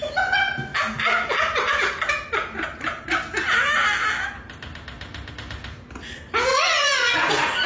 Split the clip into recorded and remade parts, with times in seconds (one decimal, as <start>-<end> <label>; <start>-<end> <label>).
0.0-6.5 recorded; 6.5-7.3 remade; 7.3-7.7 recorded